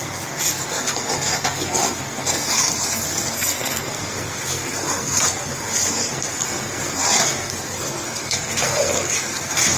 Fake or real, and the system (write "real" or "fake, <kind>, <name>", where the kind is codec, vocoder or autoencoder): fake, codec, SNAC